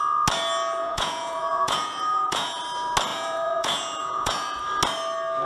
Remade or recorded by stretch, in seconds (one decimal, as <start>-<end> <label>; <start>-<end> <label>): 0.0-0.8 recorded; 0.8-2.6 remade; 2.6-3.1 recorded; 3.1-4.6 remade; 4.6-5.5 recorded